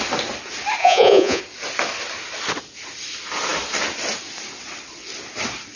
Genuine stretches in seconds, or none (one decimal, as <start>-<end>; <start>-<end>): 0.0-0.8; 1.4-5.8